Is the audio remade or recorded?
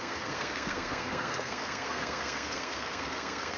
remade